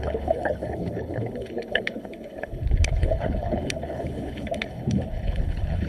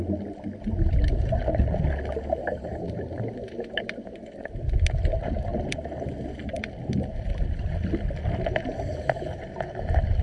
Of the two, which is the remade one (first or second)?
first